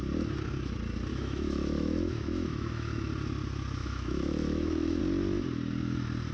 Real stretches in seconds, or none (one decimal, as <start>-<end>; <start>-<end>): 0.0-1.1; 3.0-3.8; 5.0-6.3